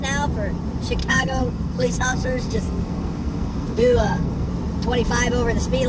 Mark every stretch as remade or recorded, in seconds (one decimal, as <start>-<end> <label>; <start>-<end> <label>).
0.0-1.0 recorded; 1.0-4.5 remade; 4.5-5.9 recorded